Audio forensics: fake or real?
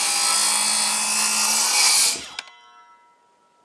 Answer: real